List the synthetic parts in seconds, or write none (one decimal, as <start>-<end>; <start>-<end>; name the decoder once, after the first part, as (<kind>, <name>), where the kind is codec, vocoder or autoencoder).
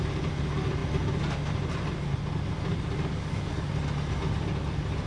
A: 2.7-3.7 (codec, DAC)